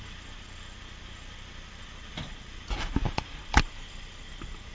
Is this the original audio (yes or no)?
yes